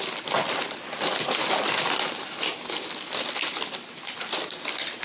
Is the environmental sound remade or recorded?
recorded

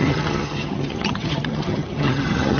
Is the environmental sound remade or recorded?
remade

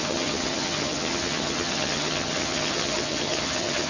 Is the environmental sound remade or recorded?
remade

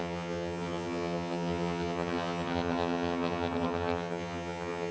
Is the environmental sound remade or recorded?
remade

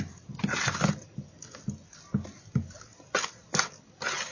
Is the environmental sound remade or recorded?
recorded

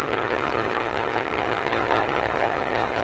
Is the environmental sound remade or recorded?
remade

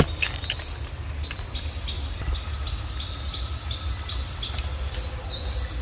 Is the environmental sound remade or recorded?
recorded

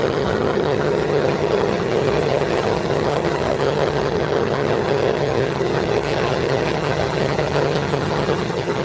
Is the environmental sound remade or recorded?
remade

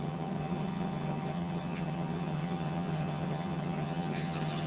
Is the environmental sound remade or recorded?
remade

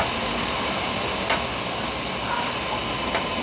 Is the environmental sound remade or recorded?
recorded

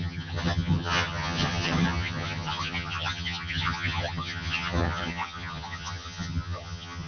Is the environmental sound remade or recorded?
remade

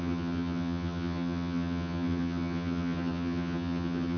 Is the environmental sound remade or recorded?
remade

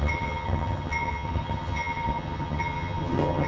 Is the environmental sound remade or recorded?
remade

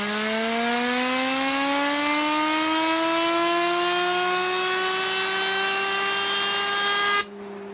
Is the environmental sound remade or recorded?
recorded